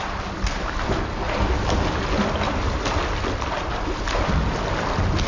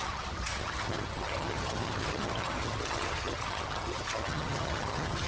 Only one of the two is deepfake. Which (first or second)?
second